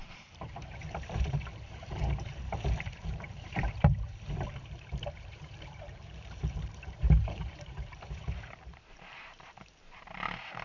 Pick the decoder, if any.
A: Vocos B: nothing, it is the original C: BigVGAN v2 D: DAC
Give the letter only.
C